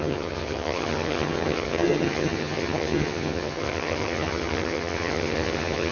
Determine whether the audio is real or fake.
fake